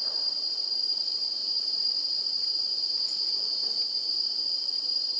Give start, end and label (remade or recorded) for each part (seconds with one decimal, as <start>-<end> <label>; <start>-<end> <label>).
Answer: 0.0-5.2 recorded